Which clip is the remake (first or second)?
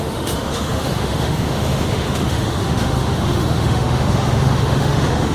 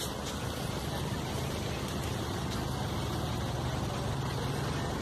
first